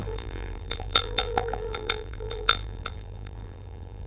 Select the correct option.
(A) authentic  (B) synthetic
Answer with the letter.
B